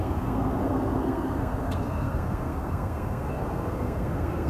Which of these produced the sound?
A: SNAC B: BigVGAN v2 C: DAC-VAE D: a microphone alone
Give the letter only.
A